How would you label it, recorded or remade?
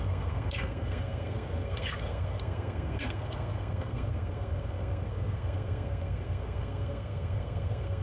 remade